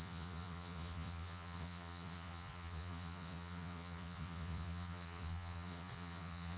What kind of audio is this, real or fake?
fake